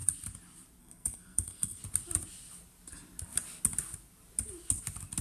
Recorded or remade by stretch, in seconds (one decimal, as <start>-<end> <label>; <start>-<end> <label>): 0.0-0.8 recorded; 0.8-1.8 remade; 1.8-5.2 recorded